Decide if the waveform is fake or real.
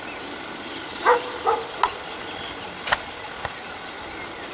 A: real